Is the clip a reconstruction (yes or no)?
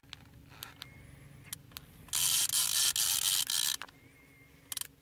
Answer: no